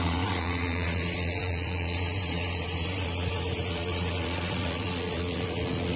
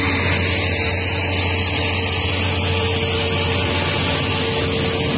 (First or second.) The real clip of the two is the second